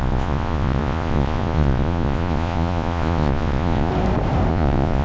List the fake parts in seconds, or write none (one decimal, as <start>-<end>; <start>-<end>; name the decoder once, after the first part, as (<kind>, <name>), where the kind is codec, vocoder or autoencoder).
0.0-3.9 (vocoder, Vocos); 4.5-5.0